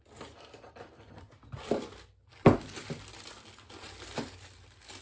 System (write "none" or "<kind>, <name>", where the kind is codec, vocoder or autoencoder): none